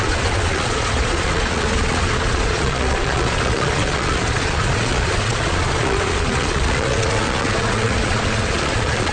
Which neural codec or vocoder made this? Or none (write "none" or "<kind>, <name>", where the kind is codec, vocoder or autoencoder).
vocoder, Vocos